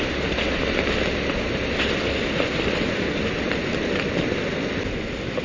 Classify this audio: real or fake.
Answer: real